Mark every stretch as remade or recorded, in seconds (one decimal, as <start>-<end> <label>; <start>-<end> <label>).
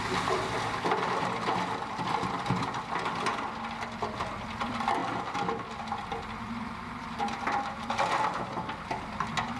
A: 0.0-3.3 remade; 3.3-4.2 recorded; 4.2-5.0 remade; 5.0-6.4 recorded; 6.4-9.6 remade